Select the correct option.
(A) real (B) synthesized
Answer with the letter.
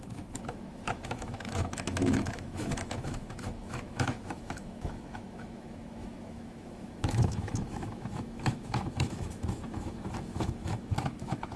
B